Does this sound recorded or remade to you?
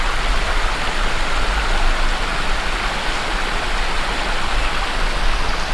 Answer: recorded